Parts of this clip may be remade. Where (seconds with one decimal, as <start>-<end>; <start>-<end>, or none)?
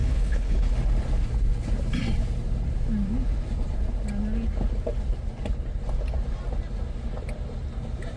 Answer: 0.0-0.7